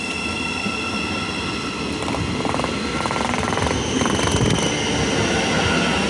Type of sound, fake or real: real